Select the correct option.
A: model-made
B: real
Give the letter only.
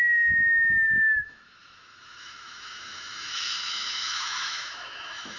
A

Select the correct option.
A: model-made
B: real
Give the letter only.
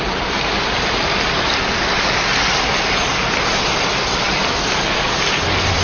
B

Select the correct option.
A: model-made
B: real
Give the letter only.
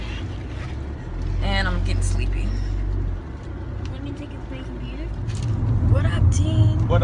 B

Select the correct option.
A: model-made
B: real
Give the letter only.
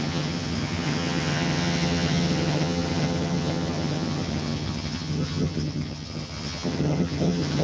A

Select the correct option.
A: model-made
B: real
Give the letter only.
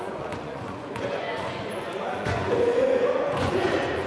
A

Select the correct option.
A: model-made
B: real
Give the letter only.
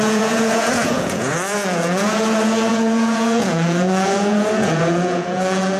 A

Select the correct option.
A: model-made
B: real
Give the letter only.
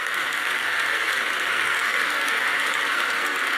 A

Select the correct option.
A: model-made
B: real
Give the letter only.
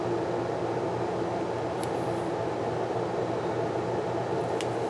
B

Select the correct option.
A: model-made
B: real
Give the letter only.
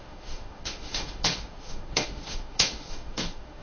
A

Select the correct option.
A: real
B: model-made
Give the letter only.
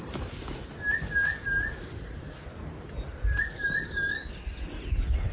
A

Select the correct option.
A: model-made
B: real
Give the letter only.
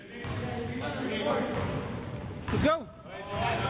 B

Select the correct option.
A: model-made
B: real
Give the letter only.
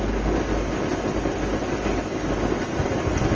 B